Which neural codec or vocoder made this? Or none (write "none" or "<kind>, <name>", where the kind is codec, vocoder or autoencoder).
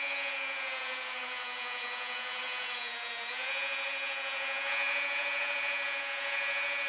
vocoder, Vocos